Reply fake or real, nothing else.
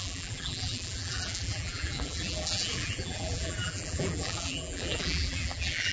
fake